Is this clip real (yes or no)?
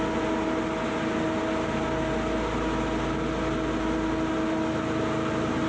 yes